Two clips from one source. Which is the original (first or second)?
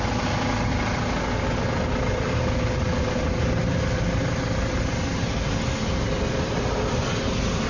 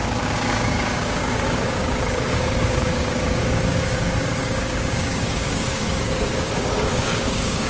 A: first